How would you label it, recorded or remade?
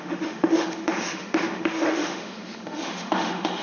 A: remade